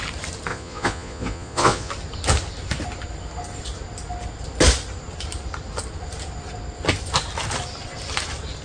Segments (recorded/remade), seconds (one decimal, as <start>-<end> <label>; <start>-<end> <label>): 0.0-0.5 recorded; 0.5-1.9 remade; 1.9-8.6 recorded